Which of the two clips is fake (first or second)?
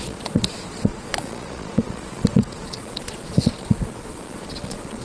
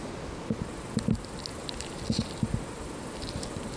first